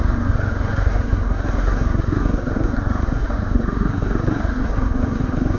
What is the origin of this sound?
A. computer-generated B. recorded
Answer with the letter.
A